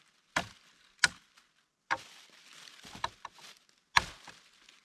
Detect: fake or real real